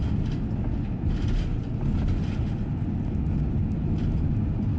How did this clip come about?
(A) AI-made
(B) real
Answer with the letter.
B